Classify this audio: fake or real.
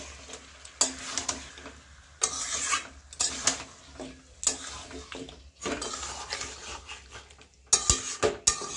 real